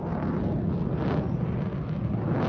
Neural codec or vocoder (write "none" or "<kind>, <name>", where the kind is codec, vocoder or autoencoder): none